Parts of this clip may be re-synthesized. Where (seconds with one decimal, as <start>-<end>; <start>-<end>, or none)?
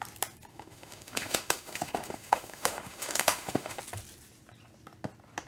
0.5-3.8